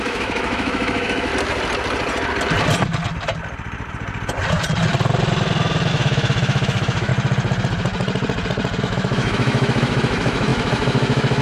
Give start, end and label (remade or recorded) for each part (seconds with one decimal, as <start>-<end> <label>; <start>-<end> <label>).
0.0-1.3 remade; 1.3-5.9 recorded; 5.9-7.1 remade; 7.1-8.8 recorded; 8.8-11.4 remade